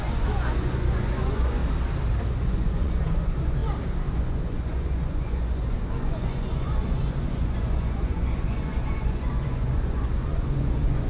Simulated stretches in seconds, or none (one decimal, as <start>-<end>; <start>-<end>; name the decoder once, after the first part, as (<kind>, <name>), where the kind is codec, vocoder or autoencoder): 0.0-1.6 (vocoder, Vocos); 2.3-3.6; 4.1-11.1